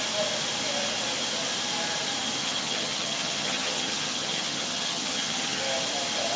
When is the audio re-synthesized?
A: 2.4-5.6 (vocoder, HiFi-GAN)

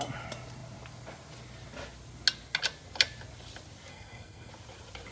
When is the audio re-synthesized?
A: 3.9-4.5 (codec, SNAC)

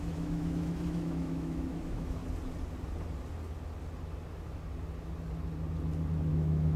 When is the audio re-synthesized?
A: 0.0-2.2 (autoencoder, DAC-VAE); 6.3-6.8

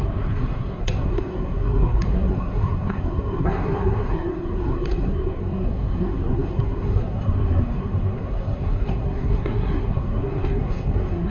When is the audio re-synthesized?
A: 0.0-11.3 (codec, SNAC)